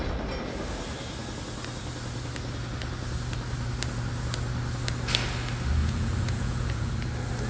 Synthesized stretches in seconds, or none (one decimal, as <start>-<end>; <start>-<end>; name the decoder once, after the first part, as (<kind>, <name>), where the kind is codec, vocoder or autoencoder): 5.8-6.9 (vocoder, Vocos)